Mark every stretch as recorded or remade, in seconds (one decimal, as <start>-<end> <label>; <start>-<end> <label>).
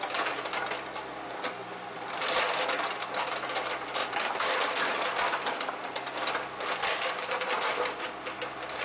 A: 0.0-4.0 recorded; 4.0-8.8 remade